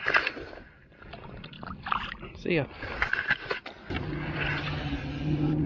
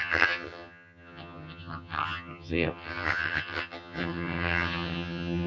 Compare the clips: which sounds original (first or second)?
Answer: first